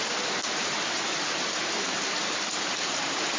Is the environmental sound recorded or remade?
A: remade